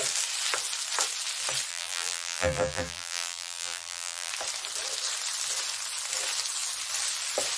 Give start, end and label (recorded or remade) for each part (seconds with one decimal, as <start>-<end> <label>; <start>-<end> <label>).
0.0-1.7 recorded; 1.7-4.3 remade; 4.3-7.6 recorded